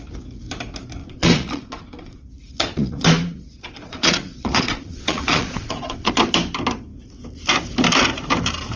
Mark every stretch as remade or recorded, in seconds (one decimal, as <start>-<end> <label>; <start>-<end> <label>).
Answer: 0.0-1.0 recorded; 1.0-6.1 remade; 6.1-8.8 recorded